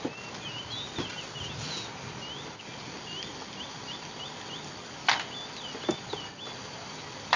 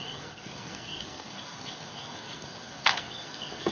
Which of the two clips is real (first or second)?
first